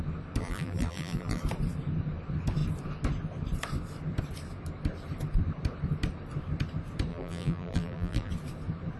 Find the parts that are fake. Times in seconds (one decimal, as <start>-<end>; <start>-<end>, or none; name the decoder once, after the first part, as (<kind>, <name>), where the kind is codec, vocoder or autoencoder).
0.4-1.4 (vocoder, BigVGAN v2); 7.1-8.3